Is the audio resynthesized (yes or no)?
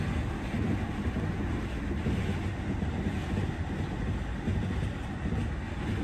no